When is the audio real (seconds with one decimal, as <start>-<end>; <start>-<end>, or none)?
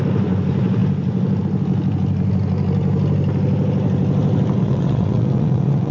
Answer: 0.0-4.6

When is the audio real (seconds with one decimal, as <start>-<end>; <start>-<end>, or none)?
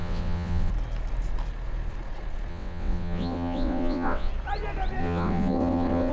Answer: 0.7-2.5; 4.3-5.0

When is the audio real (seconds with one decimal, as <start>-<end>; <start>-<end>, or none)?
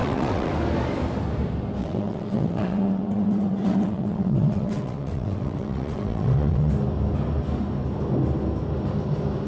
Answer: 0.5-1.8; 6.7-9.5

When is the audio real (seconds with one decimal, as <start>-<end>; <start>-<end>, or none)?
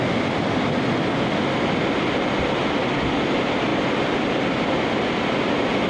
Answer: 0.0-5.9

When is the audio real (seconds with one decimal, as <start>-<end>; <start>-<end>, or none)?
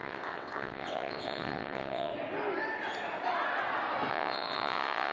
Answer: 2.1-4.1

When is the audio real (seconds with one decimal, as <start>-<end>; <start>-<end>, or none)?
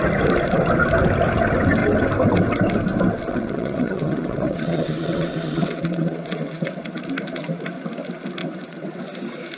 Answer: 0.0-3.3; 7.0-8.4; 9.0-9.6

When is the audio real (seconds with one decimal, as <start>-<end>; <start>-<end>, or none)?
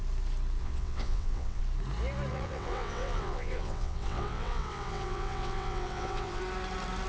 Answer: 0.0-0.6; 1.6-2.3; 6.4-7.1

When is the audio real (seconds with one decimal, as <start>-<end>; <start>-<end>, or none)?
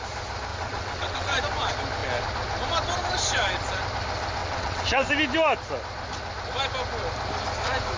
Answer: 0.0-0.5; 1.4-4.4; 5.1-8.0